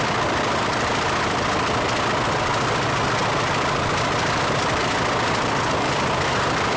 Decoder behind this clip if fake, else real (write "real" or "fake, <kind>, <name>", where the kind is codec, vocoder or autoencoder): real